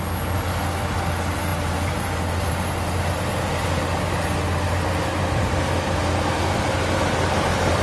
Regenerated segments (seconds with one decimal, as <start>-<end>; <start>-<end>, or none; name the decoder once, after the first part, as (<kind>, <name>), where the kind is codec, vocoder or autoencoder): none